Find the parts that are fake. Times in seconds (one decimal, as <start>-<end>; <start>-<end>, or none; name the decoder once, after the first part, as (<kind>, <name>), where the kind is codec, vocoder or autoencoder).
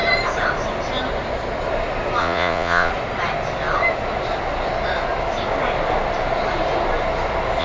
2.2-2.9 (vocoder, Vocos)